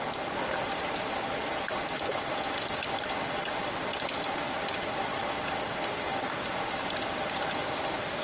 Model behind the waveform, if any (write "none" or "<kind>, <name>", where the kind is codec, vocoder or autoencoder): none